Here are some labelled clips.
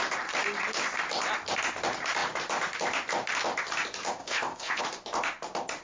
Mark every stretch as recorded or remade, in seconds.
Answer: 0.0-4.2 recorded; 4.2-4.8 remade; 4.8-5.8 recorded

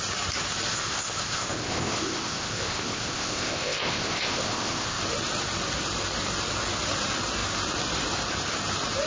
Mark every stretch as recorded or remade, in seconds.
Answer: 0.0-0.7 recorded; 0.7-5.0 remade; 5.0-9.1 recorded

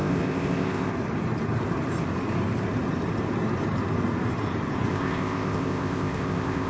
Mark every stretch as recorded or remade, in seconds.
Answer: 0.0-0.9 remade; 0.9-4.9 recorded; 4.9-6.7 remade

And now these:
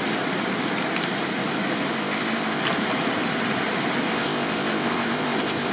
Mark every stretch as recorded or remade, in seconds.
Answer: 0.0-1.9 recorded; 1.9-2.6 remade; 2.6-4.1 recorded; 4.1-5.7 remade

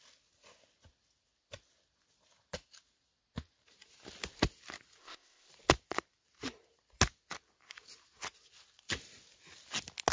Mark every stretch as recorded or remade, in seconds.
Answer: 0.0-5.0 recorded; 5.0-5.5 remade; 5.5-10.1 recorded

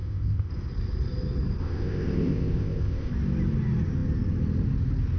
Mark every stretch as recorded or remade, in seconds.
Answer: 0.0-0.5 remade; 0.5-1.6 recorded; 1.6-3.1 remade; 3.1-5.2 recorded

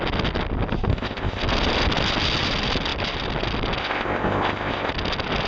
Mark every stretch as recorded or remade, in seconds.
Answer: 0.0-0.9 recorded; 0.9-1.4 remade; 1.4-3.8 recorded; 3.8-4.9 remade; 4.9-5.5 recorded

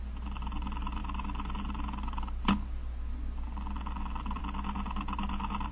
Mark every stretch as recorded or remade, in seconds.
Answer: 0.0-5.7 recorded